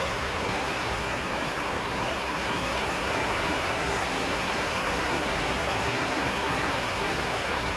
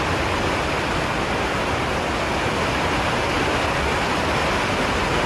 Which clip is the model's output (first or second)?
first